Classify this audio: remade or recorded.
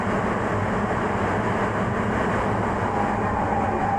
recorded